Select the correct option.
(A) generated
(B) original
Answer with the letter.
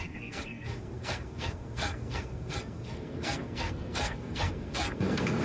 A